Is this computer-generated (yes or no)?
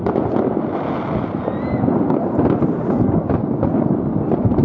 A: no